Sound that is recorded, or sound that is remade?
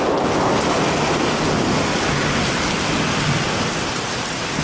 recorded